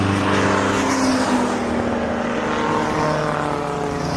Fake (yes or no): no